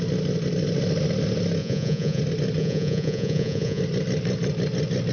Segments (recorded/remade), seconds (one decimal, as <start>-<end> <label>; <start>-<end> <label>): 0.0-1.6 recorded; 1.6-2.2 remade; 2.2-2.6 recorded; 2.6-3.8 remade; 3.8-5.1 recorded